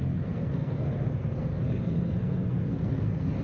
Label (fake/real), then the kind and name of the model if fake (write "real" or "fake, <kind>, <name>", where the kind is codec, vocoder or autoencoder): fake, codec, SNAC